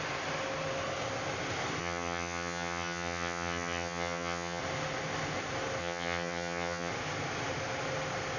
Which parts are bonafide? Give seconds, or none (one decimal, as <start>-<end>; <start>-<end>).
0.0-1.8; 4.6-5.8; 6.9-8.4